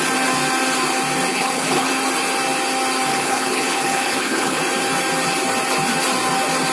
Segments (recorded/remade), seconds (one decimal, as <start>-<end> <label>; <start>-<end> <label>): 0.0-1.3 recorded; 1.3-1.9 remade; 1.9-3.1 recorded; 3.1-4.6 remade; 4.6-6.7 recorded